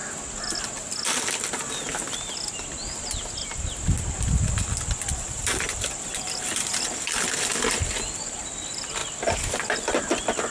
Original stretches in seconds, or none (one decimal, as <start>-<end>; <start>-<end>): 0.0-4.2; 9.0-9.5